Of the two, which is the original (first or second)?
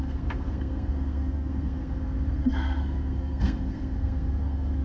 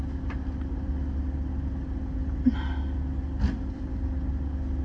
second